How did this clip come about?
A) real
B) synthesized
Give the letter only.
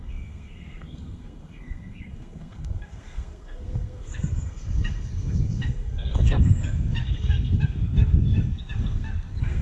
B